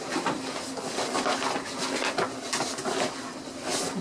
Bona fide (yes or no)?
yes